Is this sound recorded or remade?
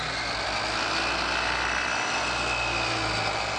recorded